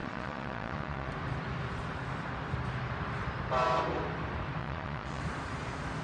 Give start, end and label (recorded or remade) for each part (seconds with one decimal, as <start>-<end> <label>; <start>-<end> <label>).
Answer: 0.0-1.1 remade; 1.1-4.6 recorded; 4.6-5.2 remade; 5.2-6.0 recorded